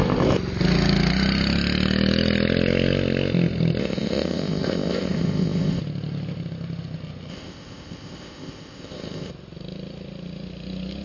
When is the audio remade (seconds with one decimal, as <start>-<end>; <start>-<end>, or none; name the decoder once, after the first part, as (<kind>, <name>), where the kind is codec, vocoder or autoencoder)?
3.8-5.8 (codec, ZipCodec); 7.3-9.3